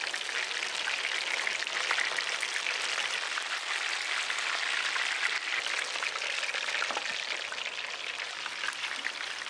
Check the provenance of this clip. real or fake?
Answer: real